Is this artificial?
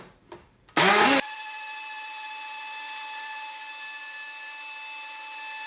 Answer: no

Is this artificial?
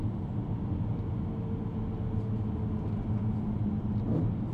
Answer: no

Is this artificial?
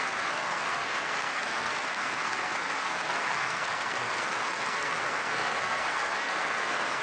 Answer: yes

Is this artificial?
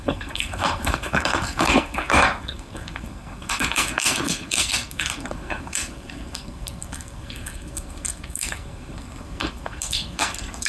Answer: yes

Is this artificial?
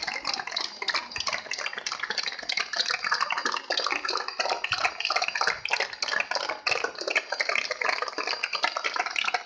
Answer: no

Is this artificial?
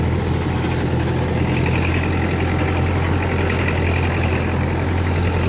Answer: no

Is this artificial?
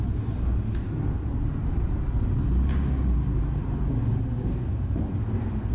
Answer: no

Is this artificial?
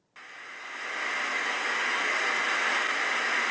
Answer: no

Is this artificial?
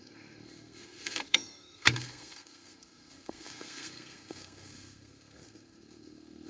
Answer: yes